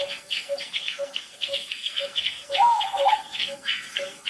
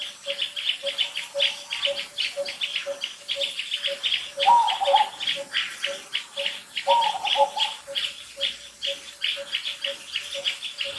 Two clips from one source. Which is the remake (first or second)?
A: first